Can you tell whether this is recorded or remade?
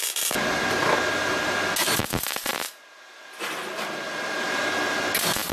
recorded